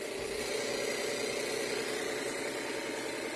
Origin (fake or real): real